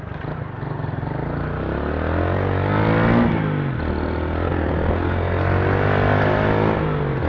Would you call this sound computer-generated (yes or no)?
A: no